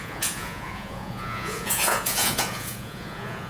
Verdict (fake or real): fake